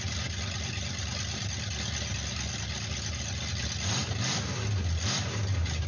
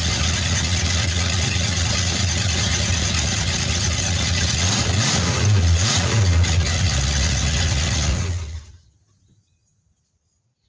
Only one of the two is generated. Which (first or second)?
second